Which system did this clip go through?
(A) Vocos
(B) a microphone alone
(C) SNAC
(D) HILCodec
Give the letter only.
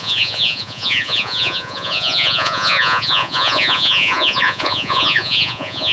A